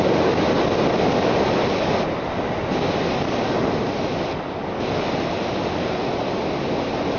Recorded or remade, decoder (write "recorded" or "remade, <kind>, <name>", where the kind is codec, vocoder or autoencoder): recorded